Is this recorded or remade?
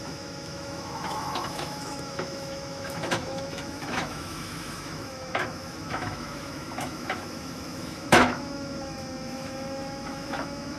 remade